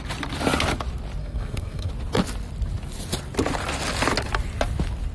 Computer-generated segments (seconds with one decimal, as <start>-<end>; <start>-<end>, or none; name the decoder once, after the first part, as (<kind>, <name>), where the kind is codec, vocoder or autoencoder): 1.2-1.9 (codec, SNAC)

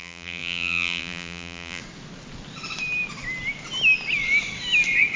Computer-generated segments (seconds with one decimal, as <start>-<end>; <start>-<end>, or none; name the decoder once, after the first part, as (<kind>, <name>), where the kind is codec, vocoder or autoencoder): 0.0-1.8 (vocoder, BigVGAN v2)